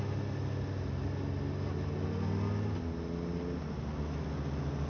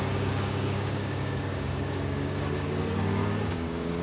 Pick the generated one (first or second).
second